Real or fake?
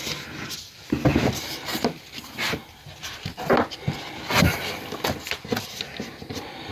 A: real